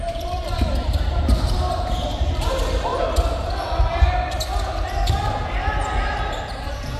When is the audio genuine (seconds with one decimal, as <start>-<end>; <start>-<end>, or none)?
2.9-6.3